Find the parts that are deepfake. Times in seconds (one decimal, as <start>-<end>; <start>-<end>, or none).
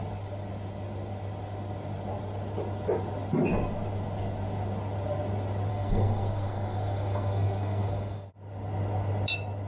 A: 5.7-8.3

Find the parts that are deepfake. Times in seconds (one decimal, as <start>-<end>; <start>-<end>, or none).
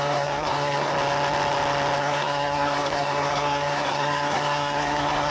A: 0.0-0.9; 2.0-5.3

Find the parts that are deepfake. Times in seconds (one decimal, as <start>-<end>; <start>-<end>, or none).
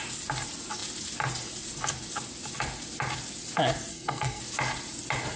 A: 3.9-4.4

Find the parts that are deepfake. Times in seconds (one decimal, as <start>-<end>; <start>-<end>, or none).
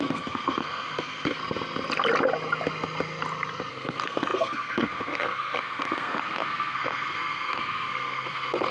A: 0.0-1.4; 3.7-8.7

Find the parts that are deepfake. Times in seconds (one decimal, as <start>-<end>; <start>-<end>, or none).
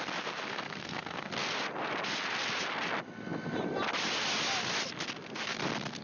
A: 0.5-1.3